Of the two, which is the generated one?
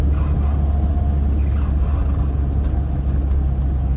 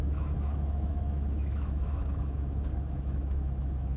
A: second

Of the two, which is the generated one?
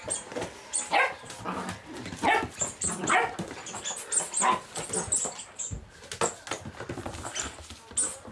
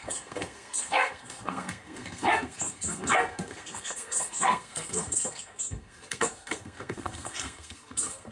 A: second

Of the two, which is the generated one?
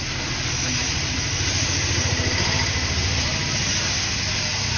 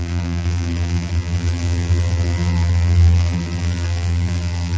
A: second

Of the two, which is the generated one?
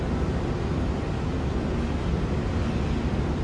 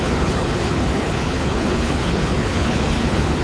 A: second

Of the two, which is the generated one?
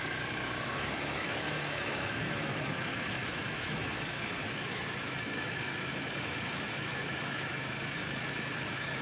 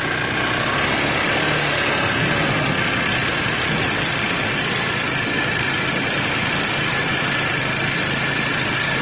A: first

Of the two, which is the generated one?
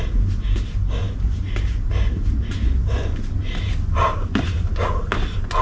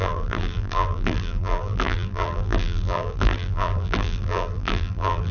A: second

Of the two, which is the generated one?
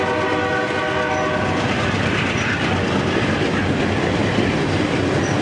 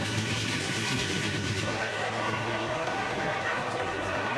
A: second